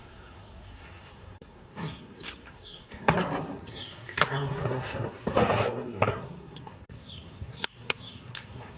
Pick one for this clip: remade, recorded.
remade